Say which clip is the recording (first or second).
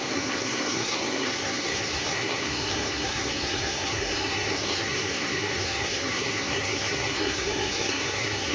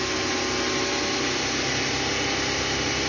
second